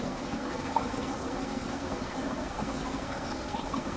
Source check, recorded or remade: remade